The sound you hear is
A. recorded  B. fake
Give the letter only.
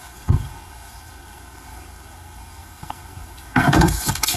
B